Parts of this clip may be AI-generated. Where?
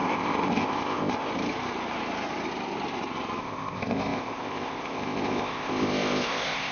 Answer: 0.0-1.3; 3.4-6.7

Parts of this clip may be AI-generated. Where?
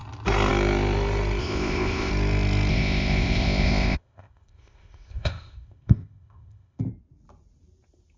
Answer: 1.4-2.1; 2.7-6.8